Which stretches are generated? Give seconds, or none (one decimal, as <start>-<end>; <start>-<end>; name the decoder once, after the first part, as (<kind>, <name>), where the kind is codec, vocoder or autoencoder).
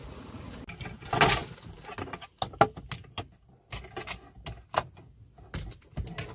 0.0-0.6 (vocoder, Vocos)